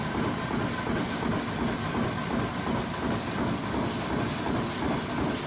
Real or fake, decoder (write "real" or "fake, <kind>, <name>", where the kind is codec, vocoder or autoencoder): real